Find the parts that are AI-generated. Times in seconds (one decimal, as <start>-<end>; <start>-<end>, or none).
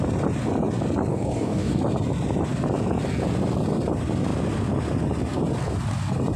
1.1-1.8